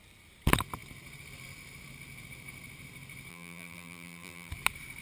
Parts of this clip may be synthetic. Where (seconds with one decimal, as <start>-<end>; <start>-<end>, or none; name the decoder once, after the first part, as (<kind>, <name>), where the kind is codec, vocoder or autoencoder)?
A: 3.3-4.5 (vocoder, BigVGAN v2)